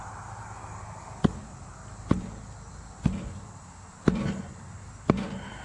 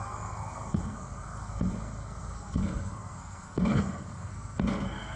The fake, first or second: second